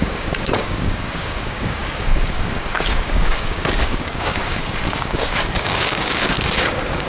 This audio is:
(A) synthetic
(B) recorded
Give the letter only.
A